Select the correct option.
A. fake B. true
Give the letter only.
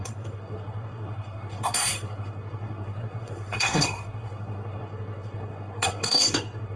A